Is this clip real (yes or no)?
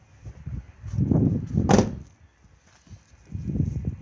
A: yes